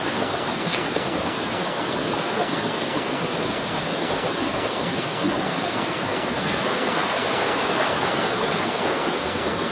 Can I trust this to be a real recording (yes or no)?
no